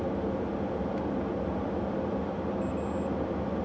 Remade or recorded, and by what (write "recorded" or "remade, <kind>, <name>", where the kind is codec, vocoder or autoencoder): recorded